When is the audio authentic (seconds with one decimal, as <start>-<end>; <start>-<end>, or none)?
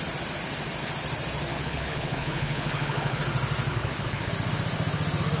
0.0-1.5; 3.2-3.7; 4.3-5.4